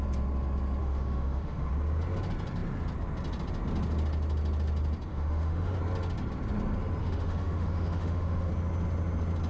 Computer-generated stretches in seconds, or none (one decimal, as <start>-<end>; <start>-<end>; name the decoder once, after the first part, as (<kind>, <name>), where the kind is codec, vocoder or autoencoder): 0.8-1.7 (autoencoder, DAC-VAE); 5.1-5.8; 7.0-8.5